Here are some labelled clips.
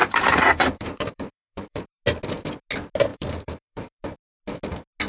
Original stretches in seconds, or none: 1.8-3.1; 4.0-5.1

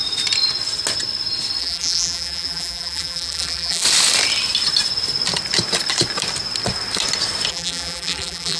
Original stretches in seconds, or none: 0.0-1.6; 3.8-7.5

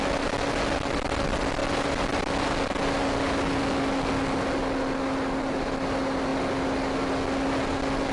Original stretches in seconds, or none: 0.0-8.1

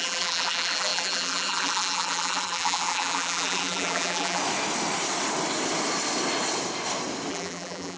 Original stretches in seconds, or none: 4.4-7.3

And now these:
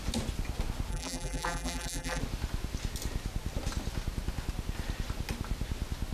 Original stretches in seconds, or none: 0.0-0.9; 2.2-6.1

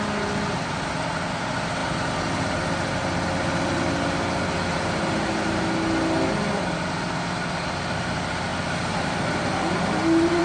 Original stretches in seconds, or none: 0.0-4.7; 5.6-8.5

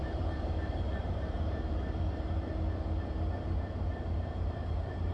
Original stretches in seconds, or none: 2.5-3.4